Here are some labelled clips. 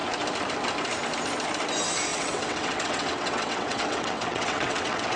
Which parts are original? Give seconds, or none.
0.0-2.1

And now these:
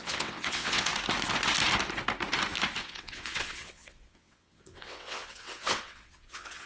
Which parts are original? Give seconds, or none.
0.9-2.8

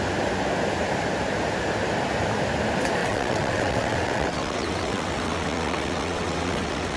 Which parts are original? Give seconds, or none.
0.0-3.0

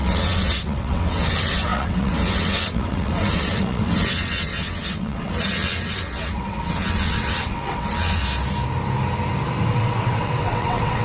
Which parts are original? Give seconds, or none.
8.2-9.7

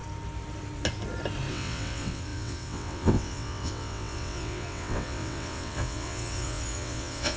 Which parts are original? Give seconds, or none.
0.0-1.5

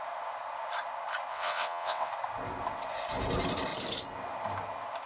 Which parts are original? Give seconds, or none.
0.0-1.3; 2.1-5.1